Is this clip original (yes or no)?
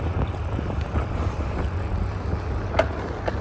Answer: yes